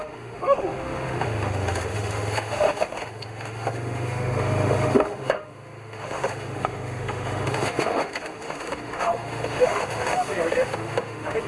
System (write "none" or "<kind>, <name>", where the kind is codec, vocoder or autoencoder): autoencoder, DAC-VAE